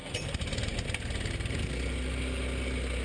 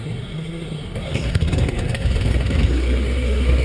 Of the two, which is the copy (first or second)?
second